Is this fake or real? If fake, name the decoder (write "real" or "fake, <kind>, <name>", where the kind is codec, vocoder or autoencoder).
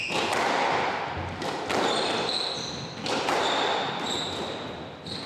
real